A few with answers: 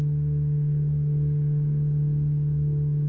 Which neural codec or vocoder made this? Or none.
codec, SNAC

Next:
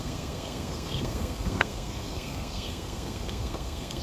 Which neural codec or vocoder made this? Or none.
codec, SNAC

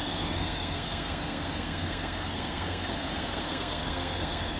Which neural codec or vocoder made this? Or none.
codec, SNAC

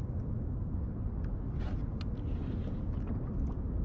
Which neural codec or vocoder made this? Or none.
none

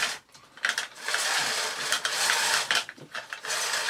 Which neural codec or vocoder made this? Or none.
none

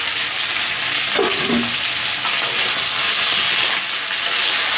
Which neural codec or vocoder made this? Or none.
none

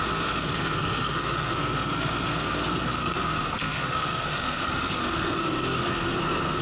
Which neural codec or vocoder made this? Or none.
codec, SNAC